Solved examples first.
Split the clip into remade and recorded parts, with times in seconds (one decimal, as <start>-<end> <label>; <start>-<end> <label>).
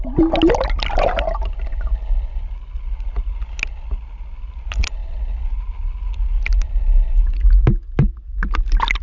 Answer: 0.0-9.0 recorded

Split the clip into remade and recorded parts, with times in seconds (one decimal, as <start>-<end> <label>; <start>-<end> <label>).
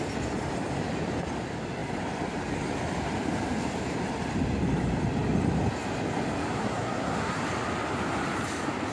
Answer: 0.0-6.5 recorded; 6.5-7.4 remade; 7.4-8.9 recorded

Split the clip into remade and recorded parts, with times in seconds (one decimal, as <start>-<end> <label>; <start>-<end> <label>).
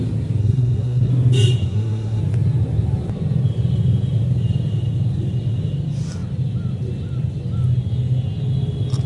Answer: 0.0-0.4 recorded; 0.4-1.1 remade; 1.1-1.6 recorded; 1.6-2.2 remade; 2.2-9.1 recorded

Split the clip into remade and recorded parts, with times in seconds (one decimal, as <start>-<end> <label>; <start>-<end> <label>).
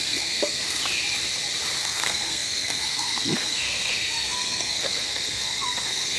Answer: 0.0-0.8 remade; 0.8-1.8 recorded; 1.8-6.2 remade